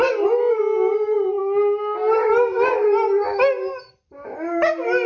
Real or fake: real